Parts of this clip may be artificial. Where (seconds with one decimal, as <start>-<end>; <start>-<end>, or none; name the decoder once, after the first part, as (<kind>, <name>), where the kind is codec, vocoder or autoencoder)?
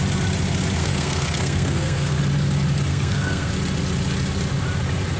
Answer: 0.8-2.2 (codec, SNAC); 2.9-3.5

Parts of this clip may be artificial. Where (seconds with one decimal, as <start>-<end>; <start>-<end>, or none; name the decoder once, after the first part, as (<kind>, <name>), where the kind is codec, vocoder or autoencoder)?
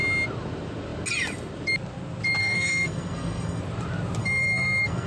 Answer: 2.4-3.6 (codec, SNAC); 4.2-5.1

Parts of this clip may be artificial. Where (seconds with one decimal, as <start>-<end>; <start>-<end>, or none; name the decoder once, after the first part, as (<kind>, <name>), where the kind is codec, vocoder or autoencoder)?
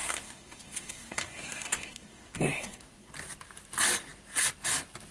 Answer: 0.0-3.1 (codec, SNAC)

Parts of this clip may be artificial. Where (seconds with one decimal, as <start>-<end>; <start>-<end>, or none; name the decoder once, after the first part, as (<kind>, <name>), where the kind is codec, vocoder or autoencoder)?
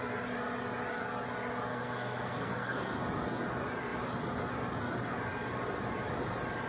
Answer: 1.7-3.0 (codec, SNAC)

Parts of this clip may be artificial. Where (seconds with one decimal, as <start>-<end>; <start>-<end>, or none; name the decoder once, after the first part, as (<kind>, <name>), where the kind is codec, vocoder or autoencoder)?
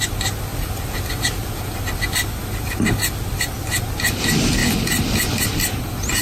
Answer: none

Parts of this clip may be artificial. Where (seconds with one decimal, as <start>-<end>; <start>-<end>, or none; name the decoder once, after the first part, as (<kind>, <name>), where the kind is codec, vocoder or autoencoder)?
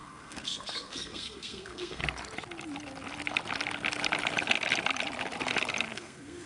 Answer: 0.0-2.0 (codec, SNAC); 5.9-6.5